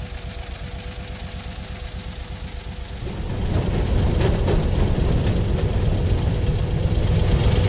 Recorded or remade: recorded